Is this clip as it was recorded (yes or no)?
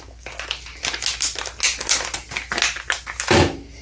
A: yes